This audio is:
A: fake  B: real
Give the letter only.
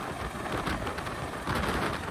A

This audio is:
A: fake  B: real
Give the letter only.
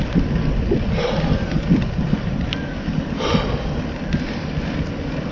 B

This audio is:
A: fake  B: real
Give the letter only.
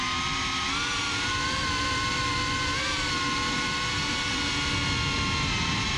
B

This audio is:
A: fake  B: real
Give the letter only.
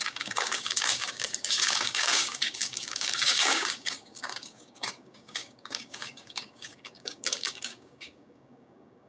A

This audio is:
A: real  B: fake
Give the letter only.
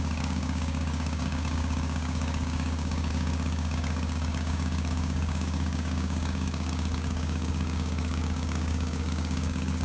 B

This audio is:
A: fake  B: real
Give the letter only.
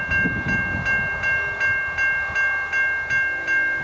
B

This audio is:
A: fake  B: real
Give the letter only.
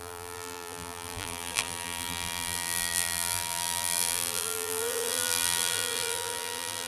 A